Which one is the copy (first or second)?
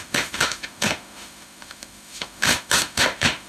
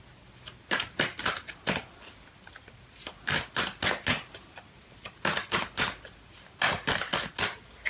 first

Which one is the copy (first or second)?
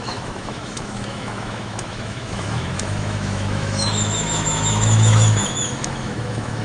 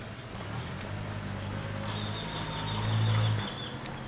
first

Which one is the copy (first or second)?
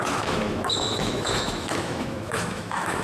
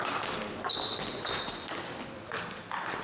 first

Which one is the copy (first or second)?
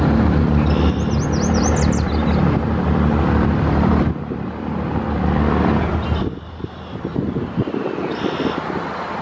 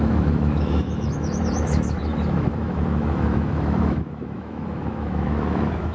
second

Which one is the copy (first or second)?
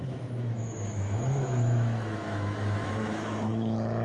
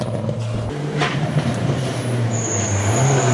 first